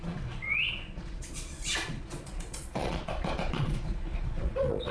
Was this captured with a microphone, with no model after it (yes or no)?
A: no